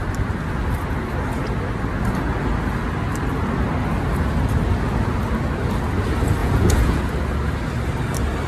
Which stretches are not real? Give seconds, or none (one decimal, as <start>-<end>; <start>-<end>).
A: 6.4-7.0